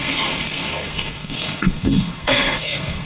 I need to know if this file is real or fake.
fake